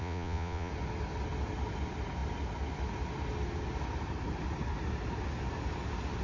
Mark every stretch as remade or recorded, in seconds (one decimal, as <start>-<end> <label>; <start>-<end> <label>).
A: 0.0-0.7 remade; 0.7-6.2 recorded